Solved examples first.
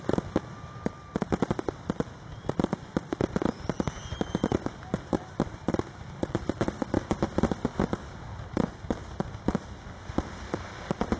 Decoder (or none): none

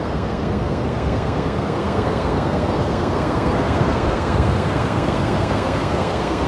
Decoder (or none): codec, SNAC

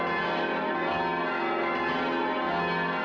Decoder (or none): none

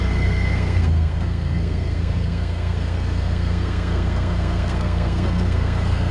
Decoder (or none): codec, SNAC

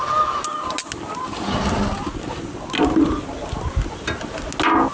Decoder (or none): none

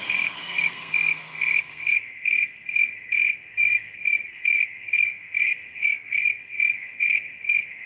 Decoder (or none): codec, SNAC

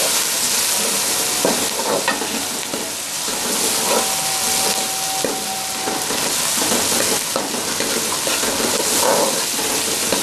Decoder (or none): none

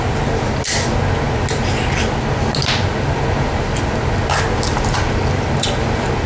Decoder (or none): none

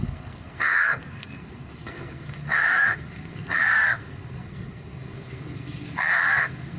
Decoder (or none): codec, SNAC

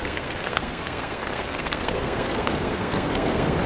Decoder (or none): codec, SNAC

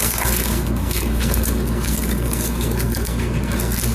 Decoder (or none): codec, SNAC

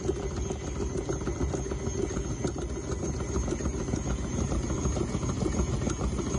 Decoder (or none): none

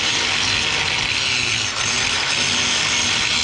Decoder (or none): none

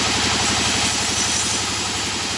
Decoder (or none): none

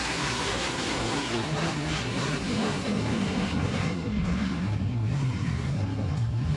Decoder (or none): codec, SNAC